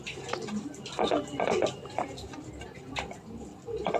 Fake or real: real